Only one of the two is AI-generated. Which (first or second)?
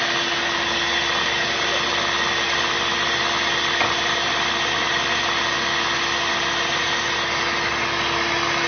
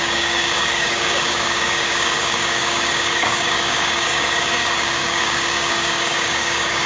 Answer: second